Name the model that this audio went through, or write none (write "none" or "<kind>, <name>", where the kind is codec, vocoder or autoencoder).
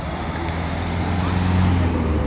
none